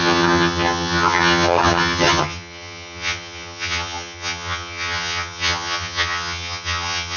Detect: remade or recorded remade